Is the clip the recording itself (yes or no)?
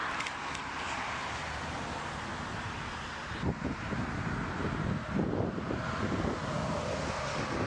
yes